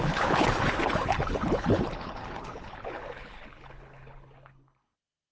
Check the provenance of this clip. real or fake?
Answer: fake